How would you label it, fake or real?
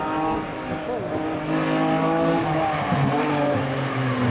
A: real